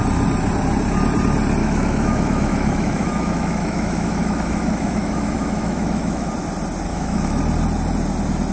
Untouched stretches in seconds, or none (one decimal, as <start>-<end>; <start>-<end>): 0.0-1.6; 6.3-6.9; 7.4-8.5